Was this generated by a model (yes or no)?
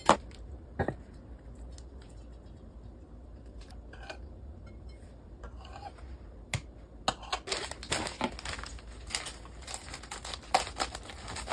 no